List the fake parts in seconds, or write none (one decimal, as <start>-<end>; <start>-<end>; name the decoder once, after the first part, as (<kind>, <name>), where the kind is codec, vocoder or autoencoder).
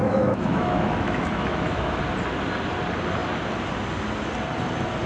0.0-2.0 (autoencoder, DAC-VAE)